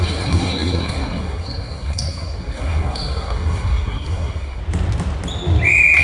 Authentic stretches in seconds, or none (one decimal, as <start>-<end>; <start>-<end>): 4.6-6.0